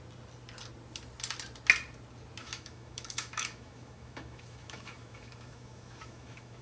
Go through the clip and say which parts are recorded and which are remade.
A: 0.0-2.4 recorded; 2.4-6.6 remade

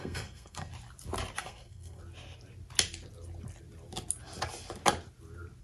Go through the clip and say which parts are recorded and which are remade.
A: 0.0-0.7 remade; 0.7-1.4 recorded; 1.4-2.0 remade; 2.0-5.6 recorded

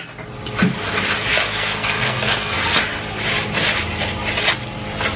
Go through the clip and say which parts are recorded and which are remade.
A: 0.0-1.3 recorded; 1.3-2.6 remade; 2.6-5.2 recorded

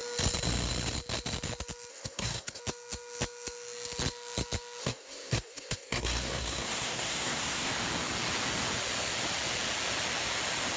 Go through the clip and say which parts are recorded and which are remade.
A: 0.0-1.9 recorded; 1.9-2.6 remade; 2.6-4.8 recorded; 4.8-7.7 remade; 7.7-10.8 recorded

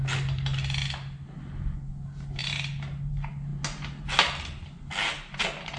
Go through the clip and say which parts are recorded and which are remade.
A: 0.0-5.8 recorded